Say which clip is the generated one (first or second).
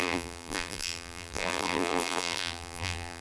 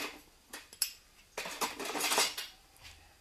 first